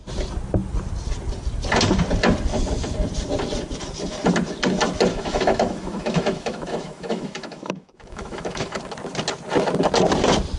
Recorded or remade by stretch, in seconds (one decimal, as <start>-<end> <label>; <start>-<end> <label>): 0.0-5.1 recorded; 5.1-8.8 remade; 8.8-10.6 recorded